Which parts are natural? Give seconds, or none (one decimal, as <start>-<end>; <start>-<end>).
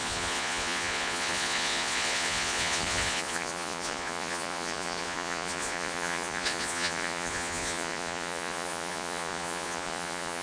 none